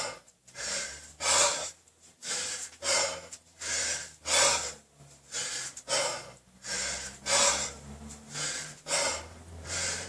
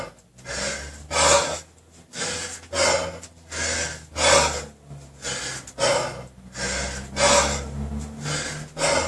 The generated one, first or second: first